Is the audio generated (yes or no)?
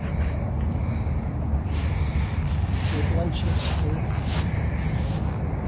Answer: no